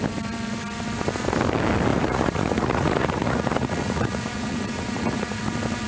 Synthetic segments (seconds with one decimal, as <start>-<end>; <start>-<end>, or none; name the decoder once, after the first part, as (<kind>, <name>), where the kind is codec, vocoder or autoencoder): 1.9-5.4 (vocoder, Vocos)

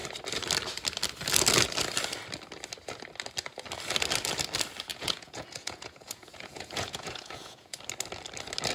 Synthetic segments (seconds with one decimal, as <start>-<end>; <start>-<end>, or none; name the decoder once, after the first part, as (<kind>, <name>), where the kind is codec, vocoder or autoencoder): 4.9-7.8 (vocoder, Vocos)

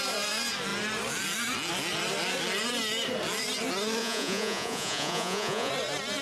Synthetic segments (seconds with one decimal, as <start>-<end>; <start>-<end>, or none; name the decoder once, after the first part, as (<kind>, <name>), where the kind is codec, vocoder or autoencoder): 4.0-5.7 (vocoder, Vocos)

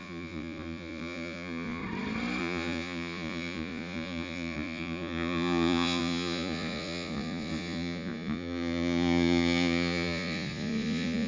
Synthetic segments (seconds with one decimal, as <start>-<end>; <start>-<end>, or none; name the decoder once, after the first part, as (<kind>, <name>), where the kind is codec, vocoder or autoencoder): 0.0-1.8 (vocoder, Vocos); 2.4-11.3

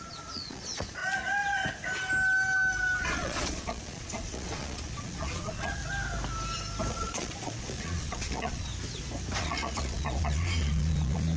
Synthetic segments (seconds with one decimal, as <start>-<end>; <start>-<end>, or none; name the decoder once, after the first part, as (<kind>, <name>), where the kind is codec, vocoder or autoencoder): 0.0-1.0 (vocoder, Vocos); 3.0-5.8; 6.9-8.7; 9.4-11.4

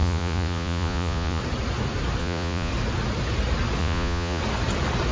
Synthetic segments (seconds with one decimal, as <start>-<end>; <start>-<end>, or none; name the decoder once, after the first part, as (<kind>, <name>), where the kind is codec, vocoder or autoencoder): 0.0-1.4 (vocoder, Vocos); 2.2-2.7; 3.8-4.4